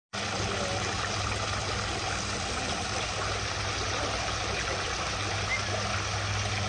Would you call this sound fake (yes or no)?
no